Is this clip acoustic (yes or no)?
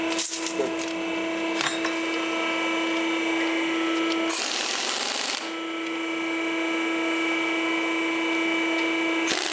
yes